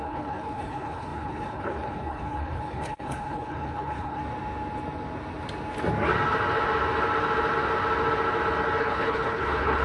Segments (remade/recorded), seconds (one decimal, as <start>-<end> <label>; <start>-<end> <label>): 0.0-4.2 remade; 4.2-8.8 recorded; 8.8-9.8 remade